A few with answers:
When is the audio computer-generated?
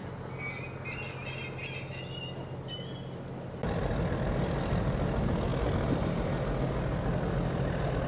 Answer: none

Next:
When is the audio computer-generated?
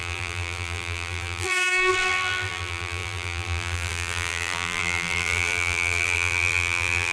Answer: 0.0-7.1 (vocoder, BigVGAN v2)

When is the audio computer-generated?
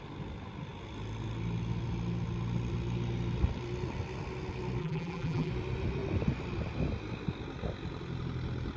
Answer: 4.8-5.5 (vocoder, BigVGAN v2)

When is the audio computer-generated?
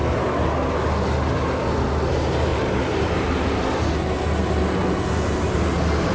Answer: 2.5-3.6 (vocoder, BigVGAN v2)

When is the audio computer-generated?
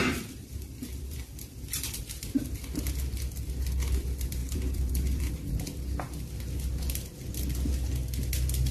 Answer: 0.0-2.0 (vocoder, BigVGAN v2); 4.4-5.3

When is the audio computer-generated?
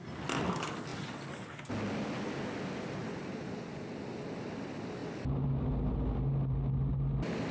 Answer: 3.0-3.9 (vocoder, BigVGAN v2)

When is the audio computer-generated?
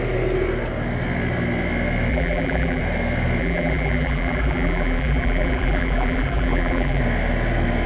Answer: 2.1-2.8 (vocoder, BigVGAN v2); 3.4-7.0